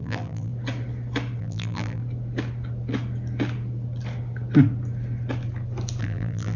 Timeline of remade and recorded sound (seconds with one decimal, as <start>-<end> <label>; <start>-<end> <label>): 0.0-0.5 remade; 0.5-1.4 recorded; 1.4-2.0 remade; 2.0-6.0 recorded; 6.0-6.6 remade